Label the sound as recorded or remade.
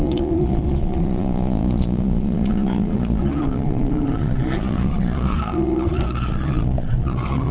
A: remade